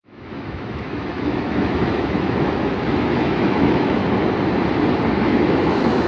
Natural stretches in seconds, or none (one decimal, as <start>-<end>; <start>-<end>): 4.0-5.2